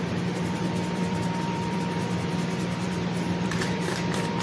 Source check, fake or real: fake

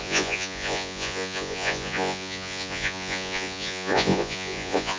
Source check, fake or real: fake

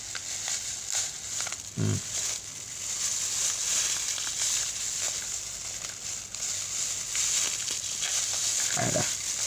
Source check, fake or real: real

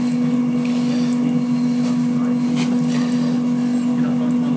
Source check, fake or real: real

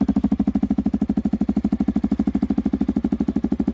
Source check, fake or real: real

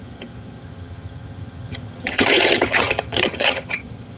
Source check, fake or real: fake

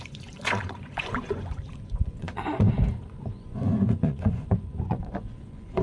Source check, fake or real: fake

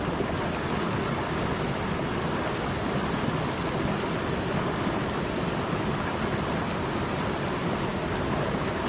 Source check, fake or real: real